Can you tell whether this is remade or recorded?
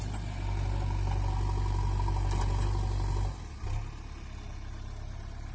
recorded